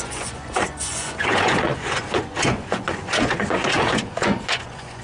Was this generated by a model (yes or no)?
yes